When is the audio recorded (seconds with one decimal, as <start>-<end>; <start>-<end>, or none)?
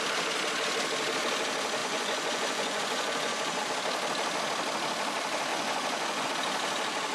0.0-1.8; 3.6-5.5; 6.3-7.1